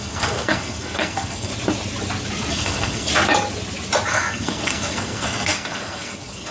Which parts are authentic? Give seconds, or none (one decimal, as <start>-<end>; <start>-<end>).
1.5-2.5; 3.1-4.1